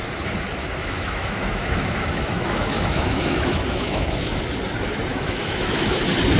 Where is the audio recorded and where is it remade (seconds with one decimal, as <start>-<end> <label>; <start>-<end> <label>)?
0.0-0.6 recorded; 0.6-4.4 remade; 4.4-5.1 recorded; 5.1-6.0 remade; 6.0-6.4 recorded